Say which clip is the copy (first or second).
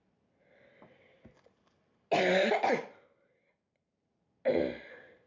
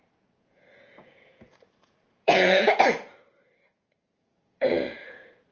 second